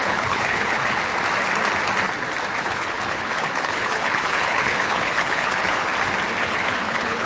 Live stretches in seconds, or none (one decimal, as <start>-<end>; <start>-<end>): 1.1-2.6; 5.9-6.4